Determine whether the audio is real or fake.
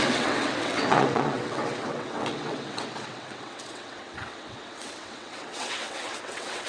fake